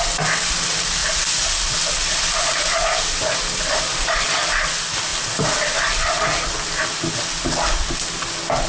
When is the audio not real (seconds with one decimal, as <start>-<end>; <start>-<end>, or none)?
none